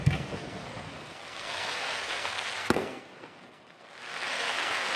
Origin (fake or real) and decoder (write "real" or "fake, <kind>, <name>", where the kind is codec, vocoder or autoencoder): fake, codec, SNAC